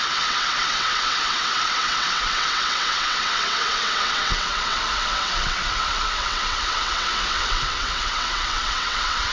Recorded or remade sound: remade